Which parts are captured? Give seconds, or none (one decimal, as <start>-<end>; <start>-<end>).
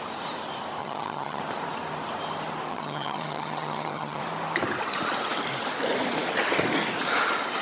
0.0-0.8; 1.4-2.7; 4.2-7.6